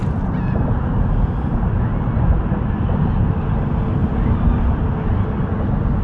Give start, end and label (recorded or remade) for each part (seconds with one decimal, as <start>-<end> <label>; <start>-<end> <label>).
0.0-4.0 recorded; 4.0-4.9 remade; 4.9-6.0 recorded